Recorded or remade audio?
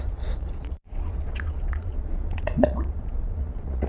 remade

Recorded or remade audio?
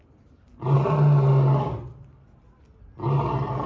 recorded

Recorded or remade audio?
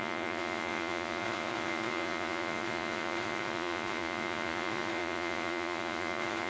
remade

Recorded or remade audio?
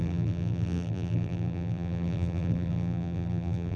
remade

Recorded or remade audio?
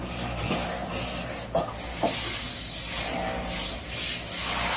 recorded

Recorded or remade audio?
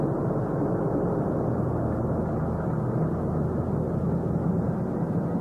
recorded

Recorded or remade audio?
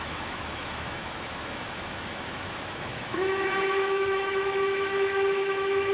remade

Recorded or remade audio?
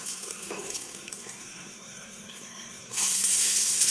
remade